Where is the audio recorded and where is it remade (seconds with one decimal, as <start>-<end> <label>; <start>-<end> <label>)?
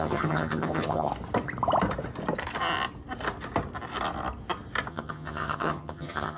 0.0-1.1 remade; 1.1-4.9 recorded; 4.9-6.4 remade